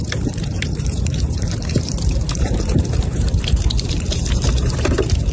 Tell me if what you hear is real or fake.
fake